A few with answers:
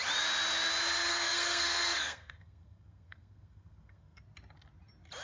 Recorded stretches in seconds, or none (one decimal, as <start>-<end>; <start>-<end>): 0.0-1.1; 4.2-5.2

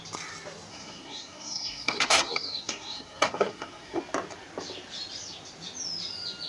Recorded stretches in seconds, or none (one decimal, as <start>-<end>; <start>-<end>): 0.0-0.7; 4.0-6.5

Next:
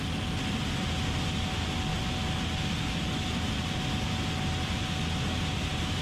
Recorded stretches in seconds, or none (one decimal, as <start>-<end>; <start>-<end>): 0.0-6.0

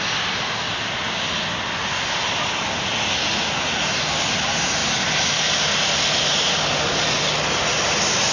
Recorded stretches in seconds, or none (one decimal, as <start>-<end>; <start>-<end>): 0.0-8.3